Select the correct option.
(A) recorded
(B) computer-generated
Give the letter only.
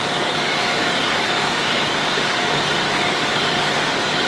B